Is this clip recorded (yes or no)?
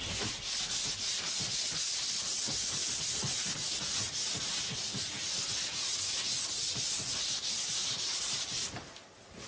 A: yes